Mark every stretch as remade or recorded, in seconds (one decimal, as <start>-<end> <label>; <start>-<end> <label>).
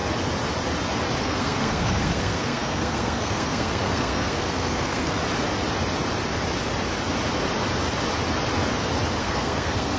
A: 0.0-1.2 recorded; 1.2-5.2 remade; 5.2-9.2 recorded; 9.2-10.0 remade